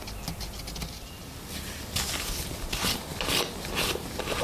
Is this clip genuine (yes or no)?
yes